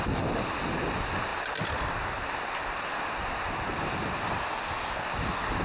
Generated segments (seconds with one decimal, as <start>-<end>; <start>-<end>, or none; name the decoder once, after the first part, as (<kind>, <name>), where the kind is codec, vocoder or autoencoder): none